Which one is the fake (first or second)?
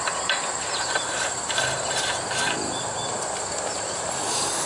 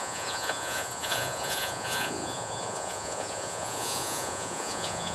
second